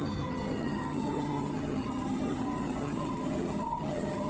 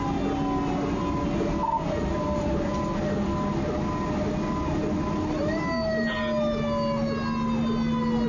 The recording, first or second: second